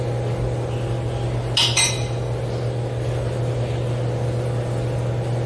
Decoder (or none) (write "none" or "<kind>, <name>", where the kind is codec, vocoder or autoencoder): none